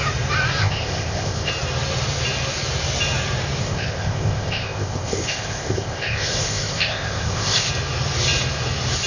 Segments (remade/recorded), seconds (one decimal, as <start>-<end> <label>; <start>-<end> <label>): 0.0-0.6 recorded; 0.6-1.5 remade; 1.5-3.6 recorded; 3.6-7.7 remade; 7.7-9.1 recorded